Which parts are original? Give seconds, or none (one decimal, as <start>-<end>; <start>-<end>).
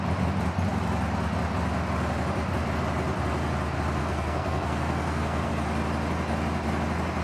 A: 0.0-4.0; 5.5-7.2